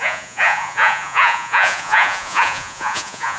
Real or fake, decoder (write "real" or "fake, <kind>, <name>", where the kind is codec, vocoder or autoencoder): fake, vocoder, Vocos